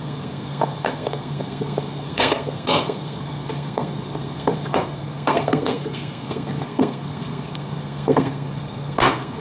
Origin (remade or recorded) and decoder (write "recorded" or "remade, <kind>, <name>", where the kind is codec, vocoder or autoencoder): remade, codec, SNAC